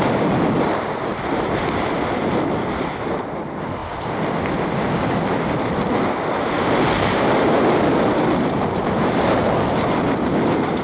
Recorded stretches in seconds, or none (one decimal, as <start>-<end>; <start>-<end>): 0.0-3.8; 4.4-10.8